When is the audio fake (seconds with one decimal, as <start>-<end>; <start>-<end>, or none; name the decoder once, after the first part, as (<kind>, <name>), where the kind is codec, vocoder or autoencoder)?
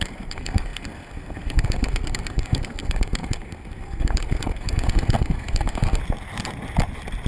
0.0-6.0 (codec, SNAC)